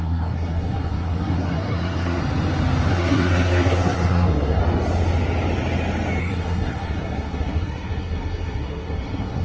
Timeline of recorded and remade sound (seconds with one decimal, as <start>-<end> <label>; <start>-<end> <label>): 0.0-2.2 remade; 2.2-2.9 recorded; 2.9-4.6 remade; 4.6-6.2 recorded; 6.2-9.4 remade

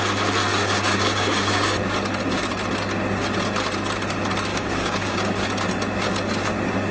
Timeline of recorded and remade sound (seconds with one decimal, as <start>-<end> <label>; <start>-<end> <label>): 0.0-0.5 recorded; 0.5-1.8 remade; 1.8-4.5 recorded; 4.5-5.4 remade; 5.4-6.9 recorded

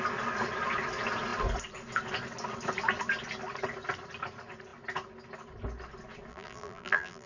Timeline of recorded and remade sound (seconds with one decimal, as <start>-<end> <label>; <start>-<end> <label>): 0.0-6.3 recorded; 6.3-7.3 remade

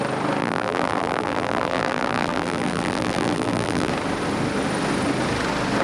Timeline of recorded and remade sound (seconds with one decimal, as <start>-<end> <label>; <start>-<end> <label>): 0.0-0.4 recorded; 0.4-3.9 remade; 3.9-5.8 recorded

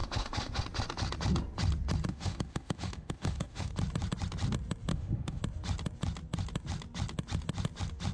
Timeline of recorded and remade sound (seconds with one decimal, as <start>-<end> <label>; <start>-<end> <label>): 0.0-0.6 remade; 0.6-2.1 recorded; 2.1-3.7 remade; 3.7-4.9 recorded; 4.9-5.4 remade; 5.4-8.1 recorded